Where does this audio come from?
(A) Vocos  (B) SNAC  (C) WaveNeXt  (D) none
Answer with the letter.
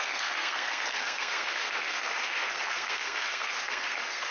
B